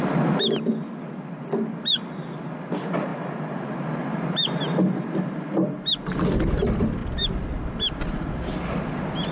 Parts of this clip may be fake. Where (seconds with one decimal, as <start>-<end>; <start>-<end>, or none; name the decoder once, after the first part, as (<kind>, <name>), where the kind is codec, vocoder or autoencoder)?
none